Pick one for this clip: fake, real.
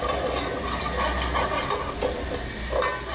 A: real